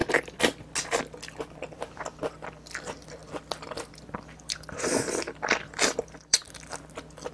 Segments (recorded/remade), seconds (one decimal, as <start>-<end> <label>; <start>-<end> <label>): 0.0-2.8 recorded; 2.8-3.2 remade; 3.2-3.9 recorded; 3.9-6.4 remade; 6.4-7.3 recorded